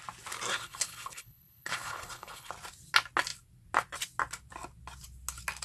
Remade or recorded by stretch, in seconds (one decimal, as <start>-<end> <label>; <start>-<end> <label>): 0.0-0.5 recorded; 0.5-2.5 remade; 2.5-5.6 recorded

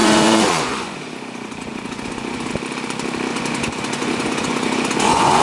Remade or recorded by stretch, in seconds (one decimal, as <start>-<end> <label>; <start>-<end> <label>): 0.0-2.5 remade; 2.5-3.3 recorded; 3.3-5.4 remade

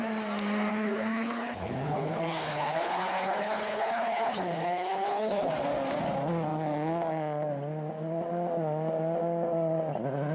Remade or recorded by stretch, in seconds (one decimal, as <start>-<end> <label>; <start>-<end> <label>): 0.0-0.7 recorded; 0.7-5.5 remade; 5.5-10.3 recorded